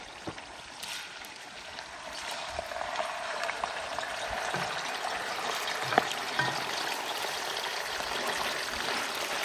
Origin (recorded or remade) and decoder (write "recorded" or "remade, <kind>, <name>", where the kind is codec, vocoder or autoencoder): remade, vocoder, BigVGAN v2